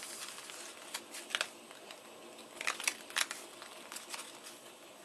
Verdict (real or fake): real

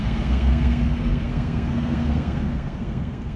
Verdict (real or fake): fake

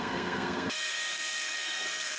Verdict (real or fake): fake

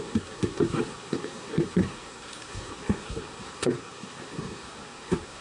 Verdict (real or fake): fake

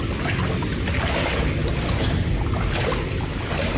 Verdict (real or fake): real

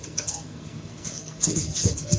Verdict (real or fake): fake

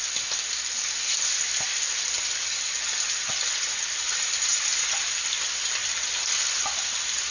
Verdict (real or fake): real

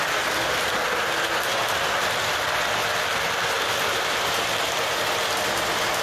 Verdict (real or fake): real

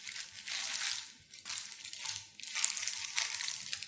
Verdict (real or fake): real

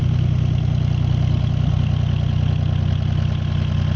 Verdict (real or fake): real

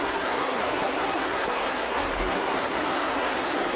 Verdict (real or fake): fake